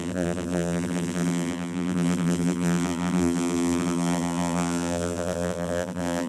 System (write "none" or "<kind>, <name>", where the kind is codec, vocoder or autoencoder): vocoder, BigVGAN v2